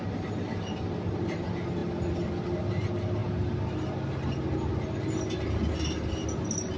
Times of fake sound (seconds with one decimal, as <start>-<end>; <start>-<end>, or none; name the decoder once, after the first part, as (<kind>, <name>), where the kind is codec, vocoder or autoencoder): none

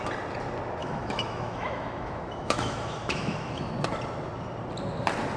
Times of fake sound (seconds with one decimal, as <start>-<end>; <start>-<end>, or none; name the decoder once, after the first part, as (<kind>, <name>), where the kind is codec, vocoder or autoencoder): 0.8-3.7 (autoencoder, DAC-VAE)

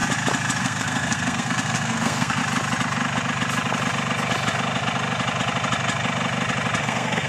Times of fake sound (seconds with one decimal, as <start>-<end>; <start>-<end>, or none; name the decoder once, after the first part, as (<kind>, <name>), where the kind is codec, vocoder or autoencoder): 0.6-2.4 (codec, SNAC); 6.8-7.3

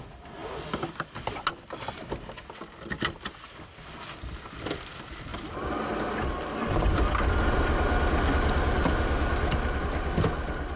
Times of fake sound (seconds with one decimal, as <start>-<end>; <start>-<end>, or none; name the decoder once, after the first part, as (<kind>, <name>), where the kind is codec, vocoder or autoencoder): none

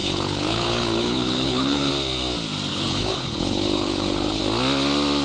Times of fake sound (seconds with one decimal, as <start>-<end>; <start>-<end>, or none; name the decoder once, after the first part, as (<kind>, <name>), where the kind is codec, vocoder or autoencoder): 0.0-1.9 (codec, HILCodec); 2.7-4.4

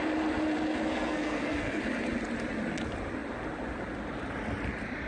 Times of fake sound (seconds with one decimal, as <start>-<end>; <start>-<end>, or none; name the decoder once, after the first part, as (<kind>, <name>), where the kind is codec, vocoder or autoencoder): 0.8-1.8 (codec, SNAC)

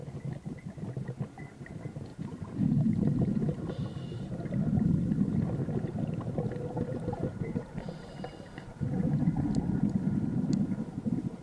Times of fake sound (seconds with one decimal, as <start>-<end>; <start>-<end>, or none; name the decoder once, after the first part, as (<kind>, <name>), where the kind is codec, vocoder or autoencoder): 2.1-3.7 (vocoder, BigVGAN v2); 7.3-9.4